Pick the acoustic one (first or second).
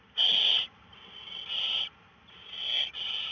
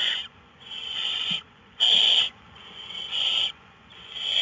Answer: first